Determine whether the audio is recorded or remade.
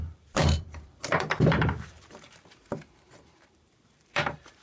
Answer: remade